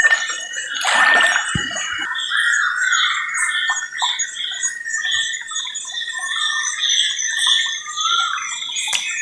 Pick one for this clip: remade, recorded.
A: recorded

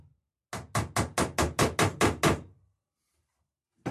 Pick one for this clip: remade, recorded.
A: recorded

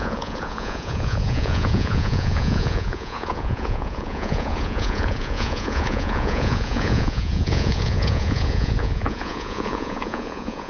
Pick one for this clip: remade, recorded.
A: remade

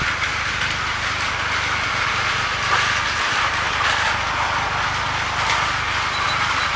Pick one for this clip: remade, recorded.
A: recorded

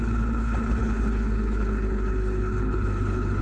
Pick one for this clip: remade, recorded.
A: remade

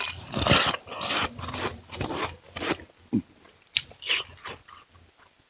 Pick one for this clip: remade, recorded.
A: recorded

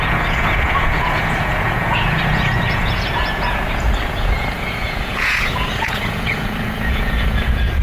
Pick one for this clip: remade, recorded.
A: remade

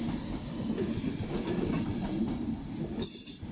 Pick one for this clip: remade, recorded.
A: remade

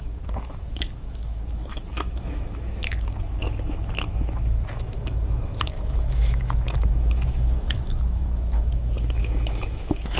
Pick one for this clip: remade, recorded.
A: remade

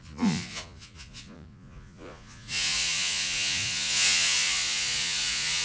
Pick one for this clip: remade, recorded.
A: remade